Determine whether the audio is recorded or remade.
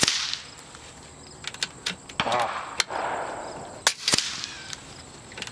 recorded